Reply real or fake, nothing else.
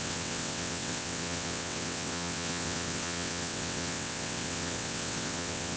fake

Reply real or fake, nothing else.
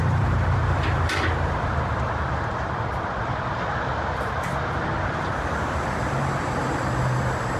fake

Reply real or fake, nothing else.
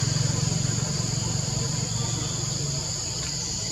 fake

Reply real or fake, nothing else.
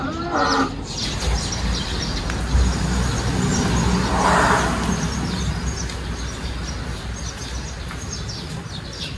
real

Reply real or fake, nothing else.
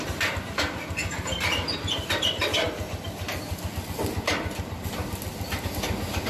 real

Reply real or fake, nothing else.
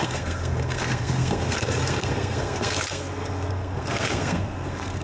fake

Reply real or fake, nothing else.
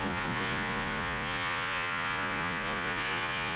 fake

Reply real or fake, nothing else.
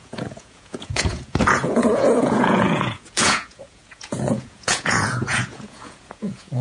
fake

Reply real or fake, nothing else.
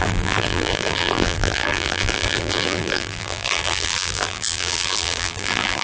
fake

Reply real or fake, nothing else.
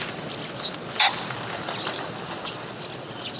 real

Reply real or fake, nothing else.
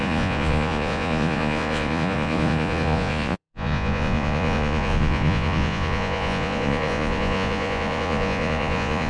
fake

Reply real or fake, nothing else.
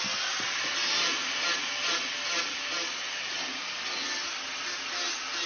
real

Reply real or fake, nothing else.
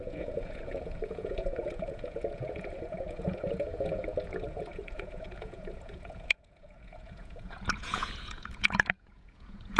fake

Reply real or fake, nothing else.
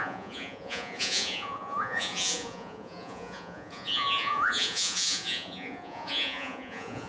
fake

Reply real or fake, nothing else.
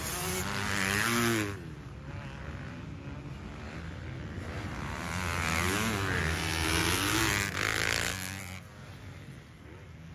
real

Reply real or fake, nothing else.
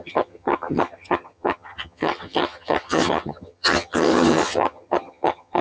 fake